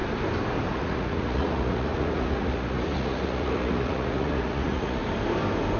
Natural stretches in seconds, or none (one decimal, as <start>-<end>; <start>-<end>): 0.0-0.7; 5.0-5.8